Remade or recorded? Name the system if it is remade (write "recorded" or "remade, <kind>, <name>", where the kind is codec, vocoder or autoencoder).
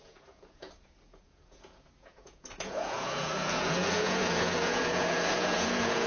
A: remade, vocoder, Vocos